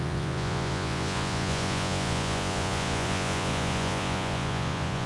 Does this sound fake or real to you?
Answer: fake